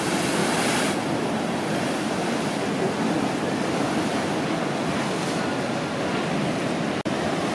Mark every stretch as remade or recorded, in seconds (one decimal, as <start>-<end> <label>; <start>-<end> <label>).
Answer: 0.0-7.5 recorded